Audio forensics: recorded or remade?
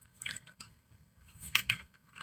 remade